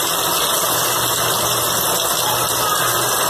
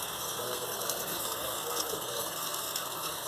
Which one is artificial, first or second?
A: second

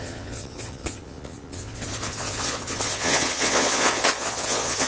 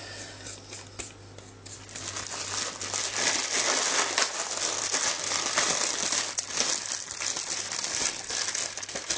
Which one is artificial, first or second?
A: first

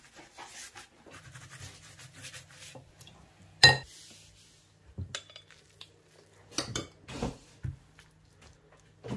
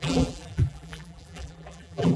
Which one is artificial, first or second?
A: second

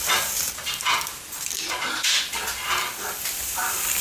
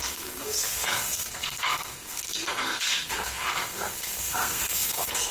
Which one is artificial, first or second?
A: second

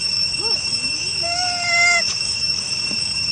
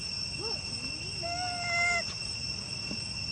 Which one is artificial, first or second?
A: first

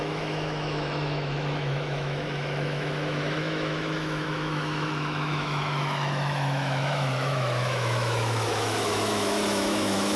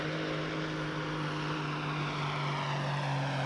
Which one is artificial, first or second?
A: first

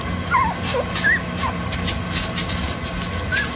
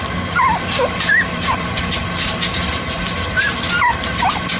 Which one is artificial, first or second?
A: second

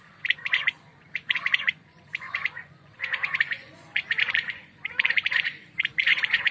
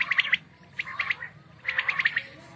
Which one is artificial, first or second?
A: first